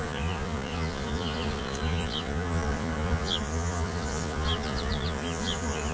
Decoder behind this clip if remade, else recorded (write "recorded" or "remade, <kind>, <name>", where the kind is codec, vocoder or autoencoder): remade, vocoder, Vocos